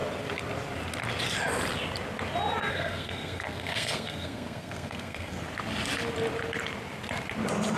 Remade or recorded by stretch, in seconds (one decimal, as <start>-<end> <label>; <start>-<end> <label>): 0.0-2.7 recorded; 2.7-5.4 remade; 5.4-7.8 recorded